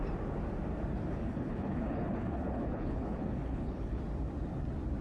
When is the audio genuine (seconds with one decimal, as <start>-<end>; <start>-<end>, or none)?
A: 0.0-1.0; 4.0-5.0